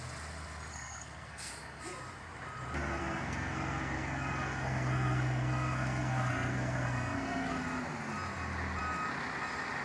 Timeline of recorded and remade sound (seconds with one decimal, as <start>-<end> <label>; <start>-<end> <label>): 0.0-0.7 recorded; 0.7-1.5 remade; 1.5-3.0 recorded; 3.0-7.6 remade; 7.6-9.8 recorded